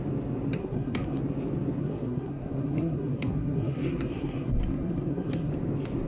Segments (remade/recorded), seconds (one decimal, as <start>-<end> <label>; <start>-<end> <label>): 0.0-0.6 recorded; 0.6-1.2 remade; 1.2-1.8 recorded; 1.8-5.5 remade; 5.5-6.1 recorded

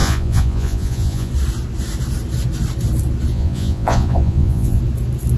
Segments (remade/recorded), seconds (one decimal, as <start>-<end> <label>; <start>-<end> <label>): 0.0-1.3 remade; 1.3-3.3 recorded; 3.3-4.8 remade; 4.8-5.4 recorded